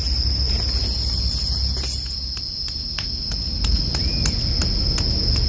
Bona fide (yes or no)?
yes